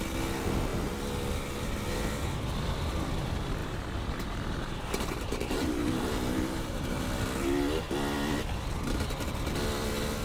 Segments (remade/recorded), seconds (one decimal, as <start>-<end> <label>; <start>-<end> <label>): 0.0-3.6 recorded; 3.6-7.0 remade; 7.0-10.2 recorded